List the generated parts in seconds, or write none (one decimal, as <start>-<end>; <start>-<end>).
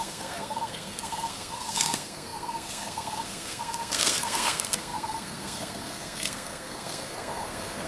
0.0-7.9